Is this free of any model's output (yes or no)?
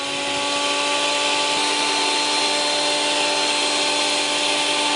yes